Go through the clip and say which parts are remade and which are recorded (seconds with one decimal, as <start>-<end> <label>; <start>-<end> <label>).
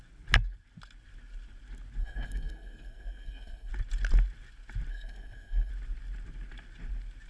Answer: 0.0-2.0 recorded; 2.0-3.7 remade; 3.7-4.9 recorded; 4.9-5.7 remade; 5.7-7.3 recorded